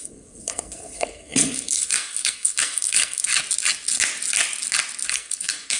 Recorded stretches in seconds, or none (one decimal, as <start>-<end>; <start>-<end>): 3.3-5.1